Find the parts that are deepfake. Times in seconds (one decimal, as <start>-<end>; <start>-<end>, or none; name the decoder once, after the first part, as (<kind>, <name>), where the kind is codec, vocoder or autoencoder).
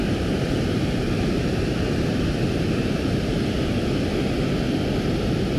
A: 0.0-3.4 (vocoder, BigVGAN v2)